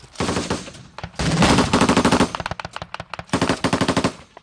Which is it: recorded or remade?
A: recorded